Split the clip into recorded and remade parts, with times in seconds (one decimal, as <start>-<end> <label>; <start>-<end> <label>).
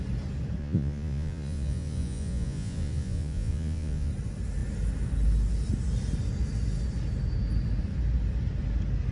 0.0-0.6 recorded; 0.6-4.1 remade; 4.1-9.1 recorded